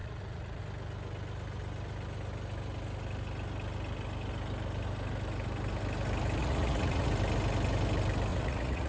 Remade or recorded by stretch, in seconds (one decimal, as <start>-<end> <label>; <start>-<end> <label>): 0.0-0.6 remade; 0.6-6.4 recorded; 6.4-7.1 remade; 7.1-8.3 recorded; 8.3-8.9 remade